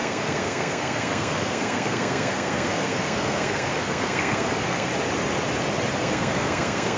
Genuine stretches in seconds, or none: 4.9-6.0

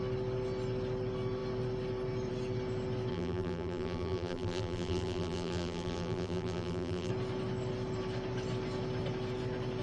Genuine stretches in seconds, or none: 0.0-3.1; 7.1-9.8

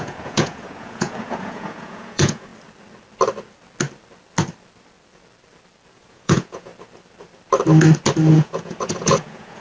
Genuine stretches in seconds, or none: 2.5-5.9; 6.7-8.3